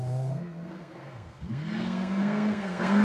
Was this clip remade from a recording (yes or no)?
yes